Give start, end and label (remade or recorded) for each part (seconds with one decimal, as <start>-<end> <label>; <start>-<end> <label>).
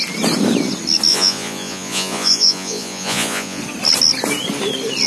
0.0-1.1 recorded; 1.1-3.6 remade; 3.6-5.1 recorded